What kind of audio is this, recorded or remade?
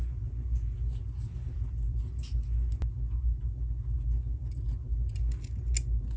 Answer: recorded